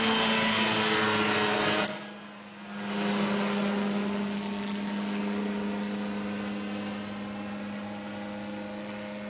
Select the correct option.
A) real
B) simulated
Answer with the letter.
A